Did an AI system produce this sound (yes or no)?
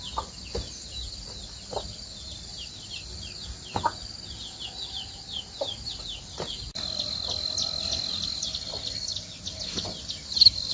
no